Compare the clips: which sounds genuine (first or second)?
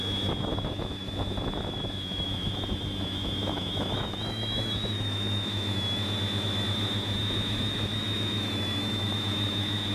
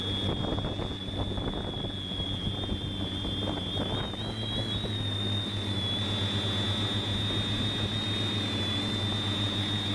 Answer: second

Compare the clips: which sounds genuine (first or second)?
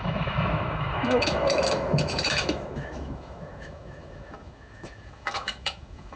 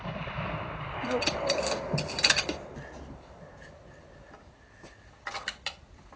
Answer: second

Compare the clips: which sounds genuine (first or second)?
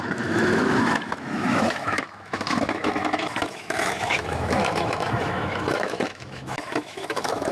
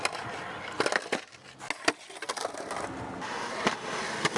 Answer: second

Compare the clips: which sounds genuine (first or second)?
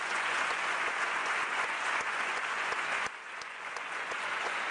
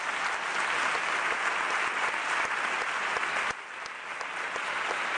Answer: second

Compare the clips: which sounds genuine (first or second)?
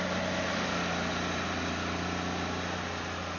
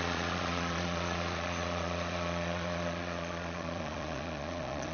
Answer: first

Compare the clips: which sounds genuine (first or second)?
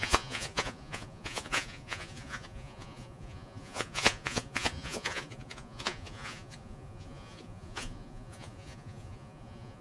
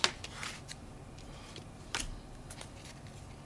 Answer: second